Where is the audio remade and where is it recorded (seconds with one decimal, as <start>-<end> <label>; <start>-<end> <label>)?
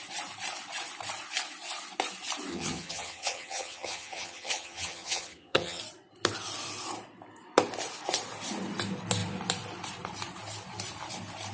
0.0-2.5 recorded; 2.5-5.8 remade; 5.8-11.5 recorded